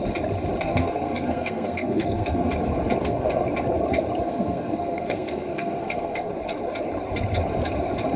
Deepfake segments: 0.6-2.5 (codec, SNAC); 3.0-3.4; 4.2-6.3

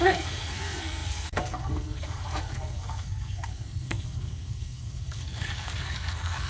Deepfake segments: 0.0-6.5 (codec, SNAC)

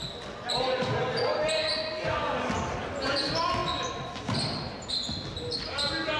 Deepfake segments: none

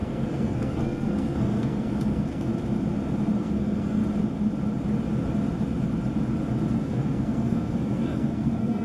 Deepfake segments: 0.0-2.5 (codec, SNAC); 3.4-4.0; 6.7-8.8